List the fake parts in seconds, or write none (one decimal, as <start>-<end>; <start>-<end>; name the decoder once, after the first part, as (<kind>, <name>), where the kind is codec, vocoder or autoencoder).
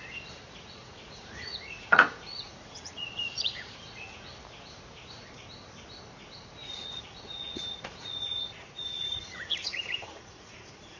0.8-4.3 (vocoder, Vocos); 6.6-11.0